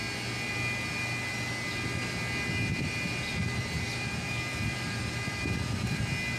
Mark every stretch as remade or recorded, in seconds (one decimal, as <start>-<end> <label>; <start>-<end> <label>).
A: 0.0-3.3 recorded; 3.3-6.0 remade; 6.0-6.4 recorded

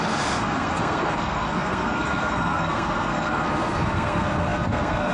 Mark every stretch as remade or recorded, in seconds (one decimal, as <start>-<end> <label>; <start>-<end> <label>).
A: 0.0-5.1 remade

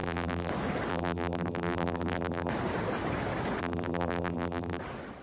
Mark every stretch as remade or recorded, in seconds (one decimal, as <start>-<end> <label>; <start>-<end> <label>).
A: 0.0-0.5 remade; 0.5-0.9 recorded; 0.9-2.5 remade; 2.5-3.6 recorded; 3.6-4.8 remade; 4.8-5.2 recorded

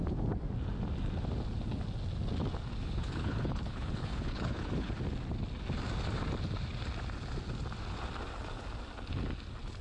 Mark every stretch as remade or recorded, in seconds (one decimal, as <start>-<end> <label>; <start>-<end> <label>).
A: 0.0-2.7 recorded; 2.7-4.9 remade; 4.9-9.8 recorded

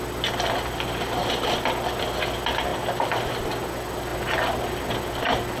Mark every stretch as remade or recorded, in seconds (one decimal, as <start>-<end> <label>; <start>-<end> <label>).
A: 0.0-2.7 recorded; 2.7-3.5 remade; 3.5-5.6 recorded